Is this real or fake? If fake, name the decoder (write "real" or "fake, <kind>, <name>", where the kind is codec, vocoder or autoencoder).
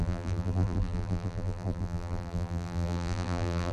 fake, vocoder, BigVGAN v2